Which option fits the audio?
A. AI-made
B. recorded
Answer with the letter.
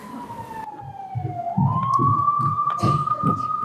B